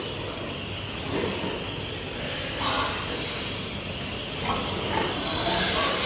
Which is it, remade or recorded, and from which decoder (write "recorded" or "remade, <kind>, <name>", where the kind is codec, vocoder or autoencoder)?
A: recorded